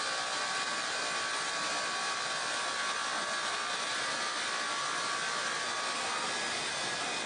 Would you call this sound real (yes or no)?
yes